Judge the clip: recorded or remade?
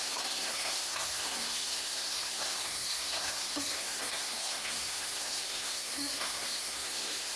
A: remade